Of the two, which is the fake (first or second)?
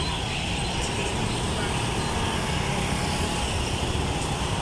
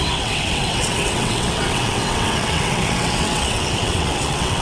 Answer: second